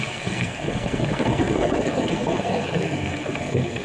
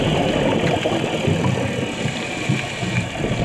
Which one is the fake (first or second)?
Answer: first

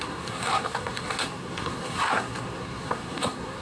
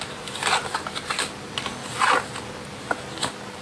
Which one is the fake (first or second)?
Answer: first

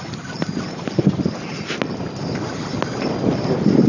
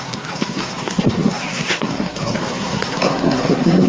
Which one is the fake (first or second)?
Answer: second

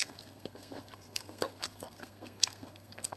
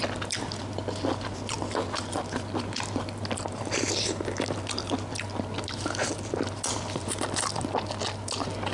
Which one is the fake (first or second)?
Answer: first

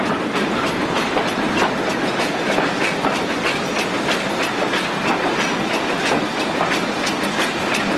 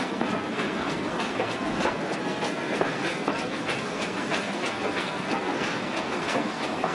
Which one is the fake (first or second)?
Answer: second